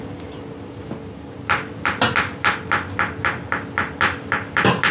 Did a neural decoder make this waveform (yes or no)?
no